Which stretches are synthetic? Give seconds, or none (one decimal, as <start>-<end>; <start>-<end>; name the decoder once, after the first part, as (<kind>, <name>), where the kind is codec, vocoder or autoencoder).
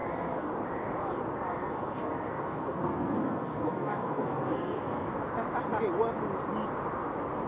0.0-0.5 (codec, SNAC); 1.6-5.2